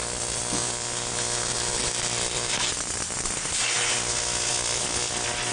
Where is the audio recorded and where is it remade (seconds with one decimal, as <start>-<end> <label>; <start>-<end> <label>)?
0.0-1.7 recorded; 1.7-3.6 remade; 3.6-5.5 recorded